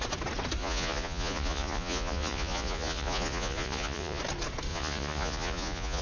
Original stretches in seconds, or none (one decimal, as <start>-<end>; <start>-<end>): 0.0-0.6; 4.2-4.7